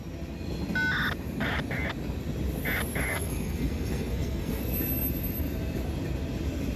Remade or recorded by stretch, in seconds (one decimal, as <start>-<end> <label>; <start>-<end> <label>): 0.0-3.1 recorded; 3.1-4.6 remade; 4.6-6.8 recorded